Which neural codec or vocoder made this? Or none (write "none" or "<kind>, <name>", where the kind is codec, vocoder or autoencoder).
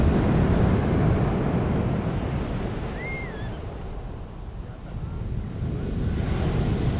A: none